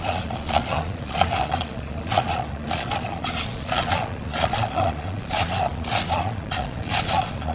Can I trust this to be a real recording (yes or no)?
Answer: no